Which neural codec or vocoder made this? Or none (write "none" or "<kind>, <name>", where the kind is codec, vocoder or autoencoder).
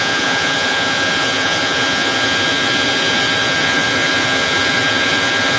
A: vocoder, Vocos